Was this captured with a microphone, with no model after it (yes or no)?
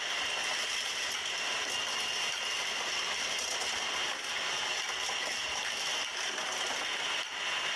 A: yes